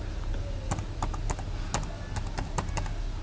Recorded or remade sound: recorded